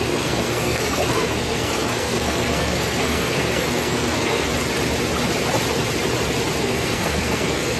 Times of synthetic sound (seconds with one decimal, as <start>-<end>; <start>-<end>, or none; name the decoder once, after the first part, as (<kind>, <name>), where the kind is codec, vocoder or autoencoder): 0.0-4.5 (codec, SNAC); 6.6-7.8